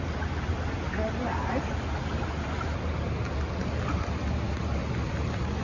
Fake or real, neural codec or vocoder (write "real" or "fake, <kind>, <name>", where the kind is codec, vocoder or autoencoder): real